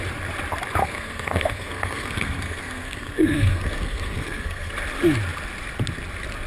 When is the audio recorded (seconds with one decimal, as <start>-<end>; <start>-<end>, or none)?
0.0-0.8; 4.7-6.5